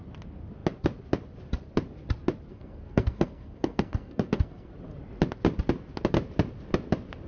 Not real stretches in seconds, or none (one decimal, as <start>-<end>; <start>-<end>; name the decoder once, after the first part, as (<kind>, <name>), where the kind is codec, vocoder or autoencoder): 2.5-4.7 (codec, SNAC)